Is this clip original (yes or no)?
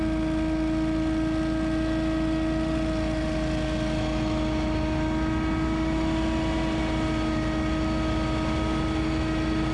yes